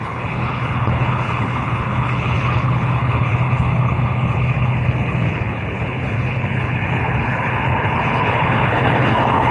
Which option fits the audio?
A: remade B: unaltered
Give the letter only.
A